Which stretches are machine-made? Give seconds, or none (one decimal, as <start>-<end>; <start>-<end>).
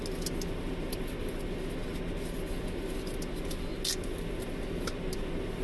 none